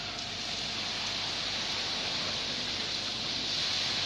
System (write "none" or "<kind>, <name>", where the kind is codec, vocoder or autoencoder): none